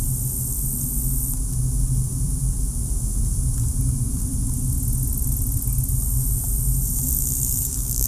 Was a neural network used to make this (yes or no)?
no